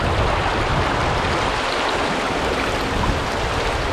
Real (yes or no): yes